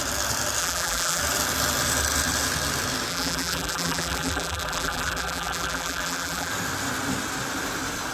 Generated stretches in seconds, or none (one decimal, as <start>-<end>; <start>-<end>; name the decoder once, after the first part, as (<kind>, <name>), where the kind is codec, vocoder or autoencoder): 0.6-1.2 (vocoder, BigVGAN v2); 3.1-6.5